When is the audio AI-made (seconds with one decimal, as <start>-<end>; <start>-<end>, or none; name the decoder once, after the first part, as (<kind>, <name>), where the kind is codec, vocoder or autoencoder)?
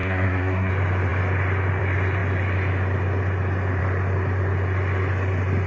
0.0-0.7 (codec, SNAC)